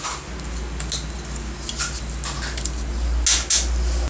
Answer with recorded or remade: recorded